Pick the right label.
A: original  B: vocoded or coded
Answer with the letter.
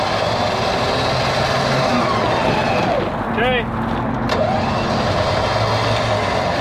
A